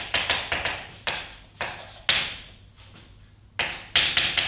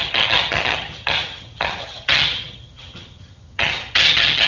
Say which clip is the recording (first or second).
first